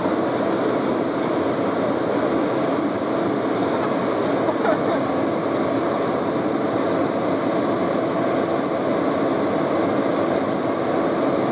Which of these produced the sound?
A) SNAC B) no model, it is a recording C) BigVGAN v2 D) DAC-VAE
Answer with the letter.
B